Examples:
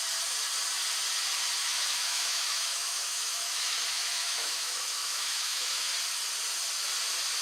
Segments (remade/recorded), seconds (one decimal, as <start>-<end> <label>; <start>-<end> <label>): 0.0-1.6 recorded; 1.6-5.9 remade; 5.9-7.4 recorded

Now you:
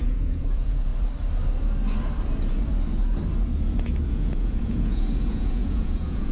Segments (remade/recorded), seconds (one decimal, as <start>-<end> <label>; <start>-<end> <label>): 0.0-0.9 remade; 0.9-4.1 recorded; 4.1-6.3 remade

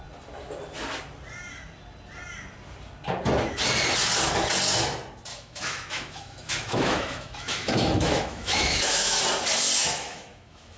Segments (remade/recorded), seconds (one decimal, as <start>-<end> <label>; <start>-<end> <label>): 0.0-5.3 recorded; 5.3-9.2 remade; 9.2-9.8 recorded; 9.8-10.8 remade

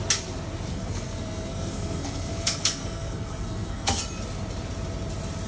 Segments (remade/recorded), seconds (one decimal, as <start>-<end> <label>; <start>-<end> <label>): 0.0-0.7 recorded; 0.7-4.0 remade; 4.0-5.5 recorded

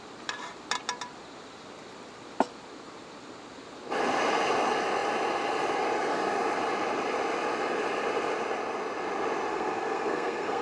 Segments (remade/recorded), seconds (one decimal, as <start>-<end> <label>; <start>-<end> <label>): 0.0-9.5 recorded; 9.5-10.6 remade

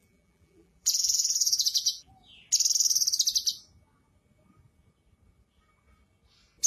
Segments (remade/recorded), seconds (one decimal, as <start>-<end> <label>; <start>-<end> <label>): 0.0-2.1 remade; 2.1-6.7 recorded

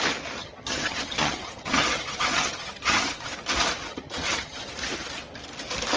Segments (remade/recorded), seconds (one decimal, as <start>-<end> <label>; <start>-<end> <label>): 0.0-0.4 recorded; 0.4-3.3 remade; 3.3-3.9 recorded; 3.9-4.7 remade; 4.7-6.0 recorded